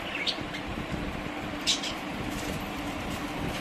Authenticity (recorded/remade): recorded